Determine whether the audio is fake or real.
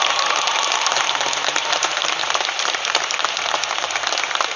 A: fake